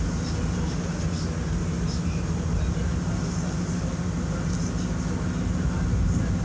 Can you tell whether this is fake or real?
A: real